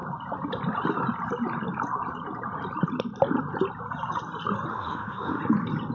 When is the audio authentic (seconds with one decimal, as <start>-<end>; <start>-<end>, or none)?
0.0-4.7; 5.4-5.9

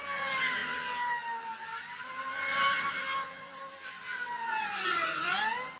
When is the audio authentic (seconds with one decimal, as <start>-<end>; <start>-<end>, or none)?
0.0-5.8

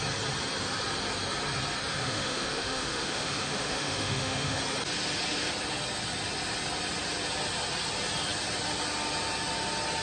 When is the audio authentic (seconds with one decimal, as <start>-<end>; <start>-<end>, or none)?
0.0-1.9; 4.6-10.0

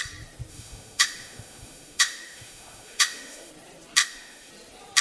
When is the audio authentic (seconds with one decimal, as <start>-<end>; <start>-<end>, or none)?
0.0-0.5; 3.5-4.0; 4.5-5.0

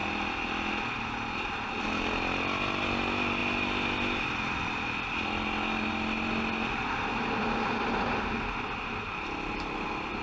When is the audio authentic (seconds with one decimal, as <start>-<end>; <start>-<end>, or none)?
0.0-10.2

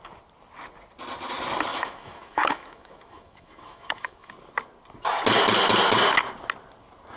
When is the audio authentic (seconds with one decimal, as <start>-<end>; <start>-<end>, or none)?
0.0-1.7; 4.3-7.2